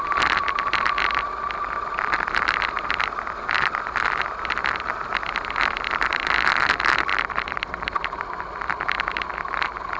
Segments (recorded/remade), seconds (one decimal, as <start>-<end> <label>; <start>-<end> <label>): 0.0-10.0 recorded